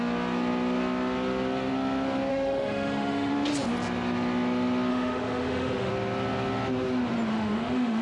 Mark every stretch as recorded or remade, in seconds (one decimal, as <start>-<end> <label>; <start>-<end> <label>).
0.0-2.3 recorded; 2.3-3.3 remade; 3.3-4.9 recorded; 4.9-5.9 remade; 5.9-7.3 recorded; 7.3-8.0 remade